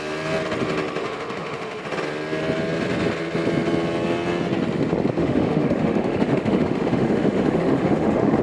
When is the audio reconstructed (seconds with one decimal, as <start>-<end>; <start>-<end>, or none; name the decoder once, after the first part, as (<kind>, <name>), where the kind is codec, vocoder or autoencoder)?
1.0-1.8 (autoencoder, DAC-VAE); 5.2-8.4